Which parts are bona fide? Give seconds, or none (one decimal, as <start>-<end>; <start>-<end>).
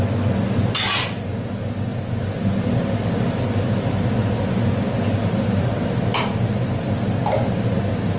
0.0-8.2